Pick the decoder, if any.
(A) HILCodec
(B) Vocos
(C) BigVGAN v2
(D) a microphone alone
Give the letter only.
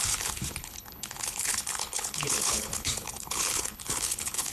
A